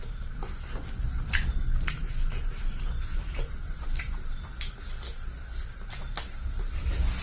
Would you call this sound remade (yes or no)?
no